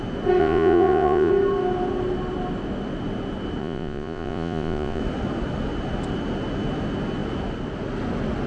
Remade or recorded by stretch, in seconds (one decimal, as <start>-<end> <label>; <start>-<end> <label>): 0.0-0.4 recorded; 0.4-1.3 remade; 1.3-3.6 recorded; 3.6-5.0 remade; 5.0-8.5 recorded